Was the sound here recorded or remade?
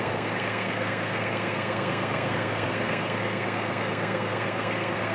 remade